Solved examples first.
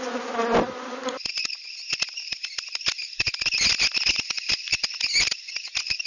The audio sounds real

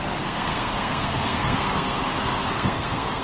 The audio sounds fake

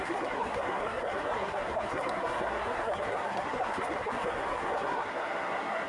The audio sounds fake